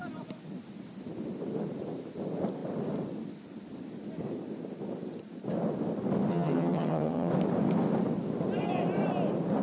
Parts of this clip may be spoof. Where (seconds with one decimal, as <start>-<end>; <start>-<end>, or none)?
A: 6.3-7.3